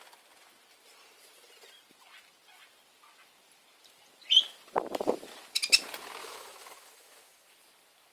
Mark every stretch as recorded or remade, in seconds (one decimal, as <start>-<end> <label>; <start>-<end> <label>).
0.0-6.2 recorded; 6.2-7.5 remade; 7.5-8.1 recorded